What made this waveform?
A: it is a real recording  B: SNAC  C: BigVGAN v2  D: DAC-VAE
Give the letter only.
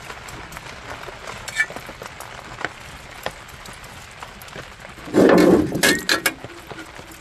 A